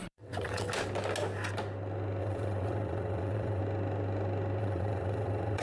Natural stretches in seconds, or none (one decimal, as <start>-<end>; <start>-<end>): 0.7-2.2; 3.6-4.6